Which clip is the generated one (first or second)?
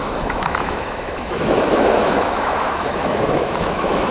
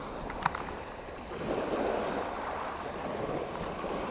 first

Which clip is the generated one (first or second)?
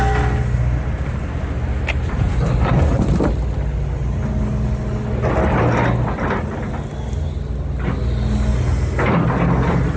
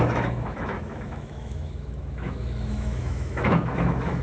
second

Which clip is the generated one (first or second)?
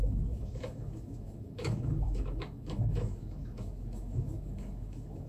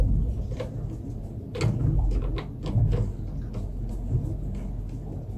first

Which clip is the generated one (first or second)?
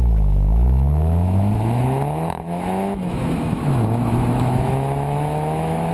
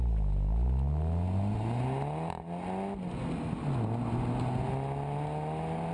first